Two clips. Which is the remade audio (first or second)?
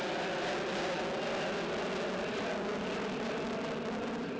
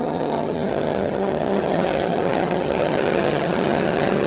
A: second